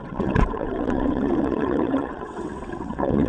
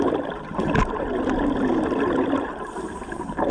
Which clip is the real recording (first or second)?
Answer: second